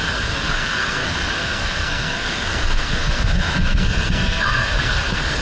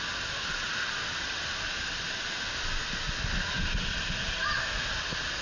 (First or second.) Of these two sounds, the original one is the second